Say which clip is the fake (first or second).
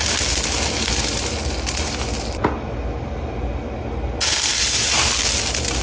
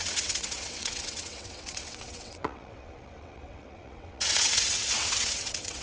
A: second